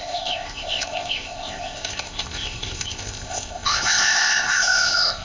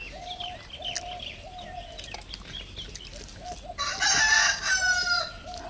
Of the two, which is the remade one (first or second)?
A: first